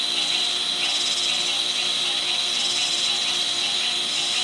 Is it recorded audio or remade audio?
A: recorded